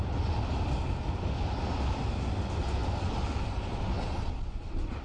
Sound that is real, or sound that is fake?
real